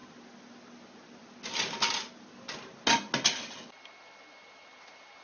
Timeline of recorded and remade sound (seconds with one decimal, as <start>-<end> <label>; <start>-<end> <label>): 0.0-5.2 recorded